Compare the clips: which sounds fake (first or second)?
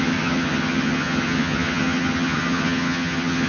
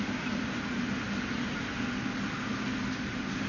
first